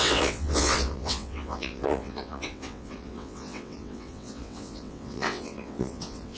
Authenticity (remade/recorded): remade